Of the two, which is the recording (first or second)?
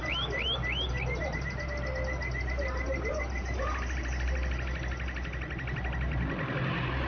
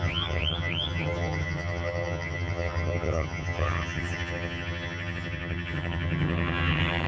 first